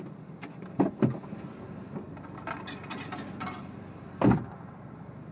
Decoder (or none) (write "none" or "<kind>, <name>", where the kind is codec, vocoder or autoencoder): none